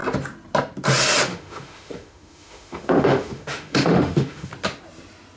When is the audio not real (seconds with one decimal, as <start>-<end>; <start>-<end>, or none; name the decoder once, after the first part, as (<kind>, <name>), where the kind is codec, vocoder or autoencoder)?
1.3-4.5 (autoencoder, DAC-VAE)